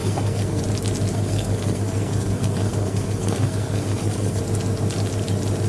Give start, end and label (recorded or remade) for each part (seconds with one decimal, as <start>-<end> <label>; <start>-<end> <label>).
0.0-0.6 remade; 0.6-1.1 recorded; 1.1-4.4 remade; 4.4-5.7 recorded